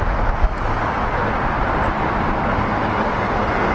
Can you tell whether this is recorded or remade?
recorded